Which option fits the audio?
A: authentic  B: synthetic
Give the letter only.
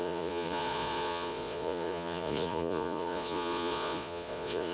B